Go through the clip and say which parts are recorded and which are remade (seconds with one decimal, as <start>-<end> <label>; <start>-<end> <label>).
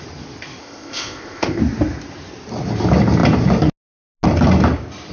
0.0-0.6 recorded; 0.6-1.6 remade; 1.6-5.1 recorded